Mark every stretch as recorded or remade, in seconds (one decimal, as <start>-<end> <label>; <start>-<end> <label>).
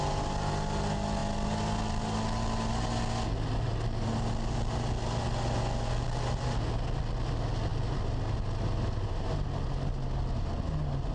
0.0-11.1 recorded